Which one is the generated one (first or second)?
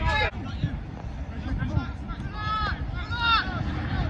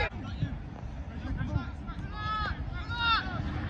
first